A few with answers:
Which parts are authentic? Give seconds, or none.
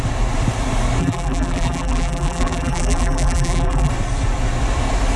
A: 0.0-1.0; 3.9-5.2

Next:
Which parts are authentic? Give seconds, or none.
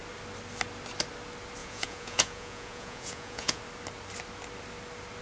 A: 0.0-1.6; 3.6-5.2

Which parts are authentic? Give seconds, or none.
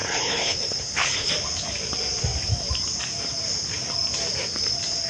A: 1.3-5.1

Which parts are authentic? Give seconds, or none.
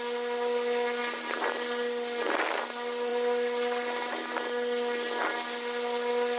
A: 0.0-6.4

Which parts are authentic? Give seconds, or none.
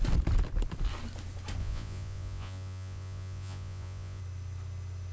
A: 0.0-1.6; 4.2-5.1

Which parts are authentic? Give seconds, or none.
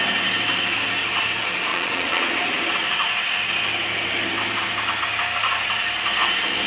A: 0.0-1.7; 2.3-6.7